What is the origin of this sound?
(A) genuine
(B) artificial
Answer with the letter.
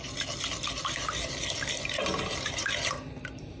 A